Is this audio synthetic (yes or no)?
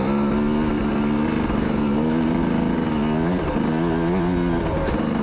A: no